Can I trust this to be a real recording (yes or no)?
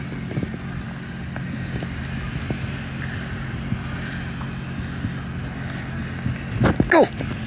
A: yes